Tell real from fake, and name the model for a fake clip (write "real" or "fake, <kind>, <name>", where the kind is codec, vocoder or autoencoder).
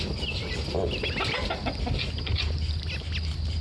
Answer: real